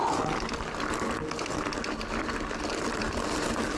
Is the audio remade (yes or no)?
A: no